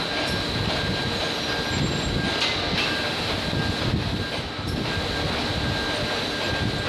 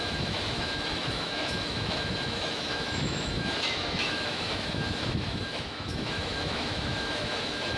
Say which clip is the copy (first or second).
second